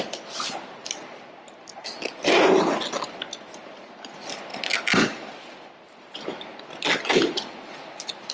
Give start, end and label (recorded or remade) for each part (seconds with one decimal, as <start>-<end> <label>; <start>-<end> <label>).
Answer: 0.0-8.3 recorded